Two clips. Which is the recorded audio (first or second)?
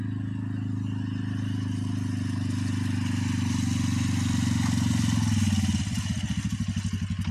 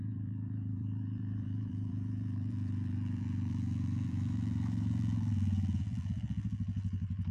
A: first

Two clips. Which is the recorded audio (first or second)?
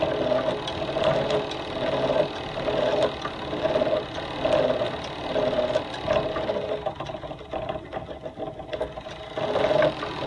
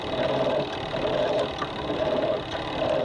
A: first